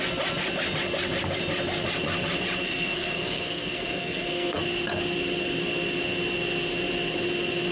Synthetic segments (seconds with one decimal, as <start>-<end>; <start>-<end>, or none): 2.6-4.6

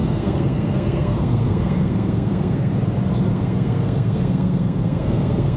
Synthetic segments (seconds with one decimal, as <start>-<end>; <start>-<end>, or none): 0.0-2.7; 3.3-5.6